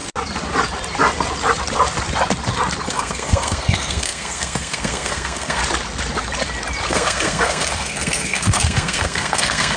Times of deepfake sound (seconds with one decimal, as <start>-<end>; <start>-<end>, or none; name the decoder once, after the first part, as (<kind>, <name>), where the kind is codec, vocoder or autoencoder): 2.9-5.6 (codec, SNAC); 6.9-9.8